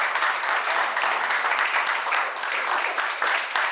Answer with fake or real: fake